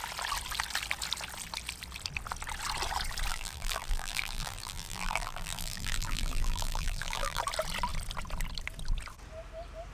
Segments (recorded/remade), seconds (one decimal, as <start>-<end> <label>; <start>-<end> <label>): 0.0-3.3 recorded; 3.3-7.4 remade; 7.4-9.9 recorded